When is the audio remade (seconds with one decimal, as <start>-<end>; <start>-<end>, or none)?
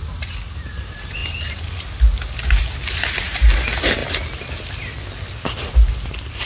none